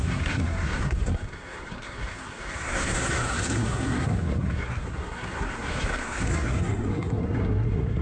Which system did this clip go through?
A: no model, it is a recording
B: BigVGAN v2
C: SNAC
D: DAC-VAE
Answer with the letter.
C